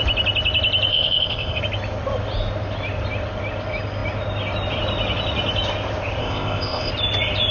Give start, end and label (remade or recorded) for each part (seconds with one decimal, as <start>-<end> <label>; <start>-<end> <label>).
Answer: 0.0-0.9 recorded; 0.9-1.6 remade; 1.6-6.2 recorded; 6.2-6.9 remade; 6.9-7.5 recorded